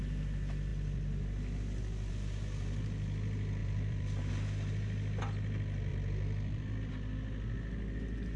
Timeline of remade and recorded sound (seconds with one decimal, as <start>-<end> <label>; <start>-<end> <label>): 0.0-3.6 recorded; 3.6-4.3 remade; 4.3-5.9 recorded; 5.9-6.9 remade; 6.9-8.4 recorded